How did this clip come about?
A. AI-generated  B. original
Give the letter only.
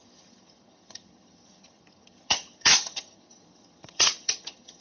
A